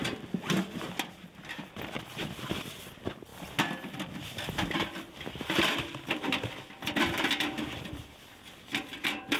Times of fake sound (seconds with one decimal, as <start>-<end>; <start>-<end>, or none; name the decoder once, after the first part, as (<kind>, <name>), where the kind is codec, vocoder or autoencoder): 3.3-8.4 (vocoder, BigVGAN v2)